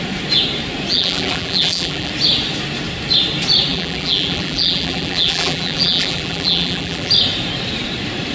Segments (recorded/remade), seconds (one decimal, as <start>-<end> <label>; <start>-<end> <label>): 0.0-0.9 recorded; 0.9-2.1 remade; 2.1-3.7 recorded; 3.7-7.1 remade; 7.1-8.3 recorded